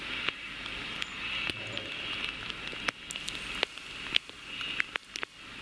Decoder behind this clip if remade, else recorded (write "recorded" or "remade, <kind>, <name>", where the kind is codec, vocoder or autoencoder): recorded